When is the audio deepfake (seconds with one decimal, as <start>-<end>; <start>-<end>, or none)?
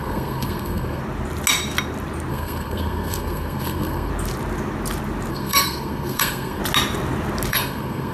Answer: 0.0-1.0; 2.3-4.1; 5.3-6.6; 7.5-8.1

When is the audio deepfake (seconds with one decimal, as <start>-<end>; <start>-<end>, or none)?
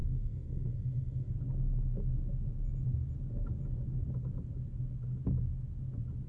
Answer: 0.0-1.3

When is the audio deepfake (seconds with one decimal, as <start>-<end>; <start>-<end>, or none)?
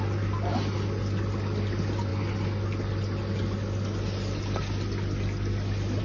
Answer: none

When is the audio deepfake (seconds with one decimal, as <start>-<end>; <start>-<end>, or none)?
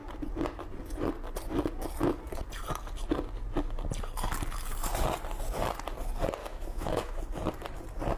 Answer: 6.4-7.2